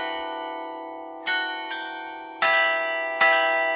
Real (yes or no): yes